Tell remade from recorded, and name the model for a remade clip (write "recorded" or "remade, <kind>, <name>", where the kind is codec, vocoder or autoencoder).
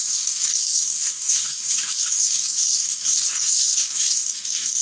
remade, codec, DAC